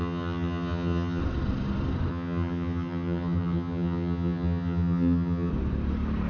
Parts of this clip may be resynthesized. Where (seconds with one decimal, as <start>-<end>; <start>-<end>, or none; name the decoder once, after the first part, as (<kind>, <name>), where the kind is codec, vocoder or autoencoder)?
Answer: 0.0-1.2 (vocoder, HiFi-GAN); 2.1-5.5